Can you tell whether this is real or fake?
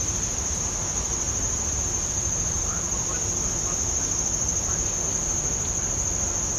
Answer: real